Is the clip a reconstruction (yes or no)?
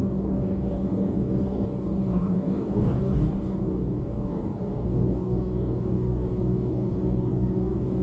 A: yes